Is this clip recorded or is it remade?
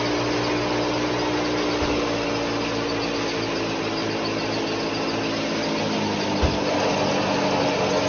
recorded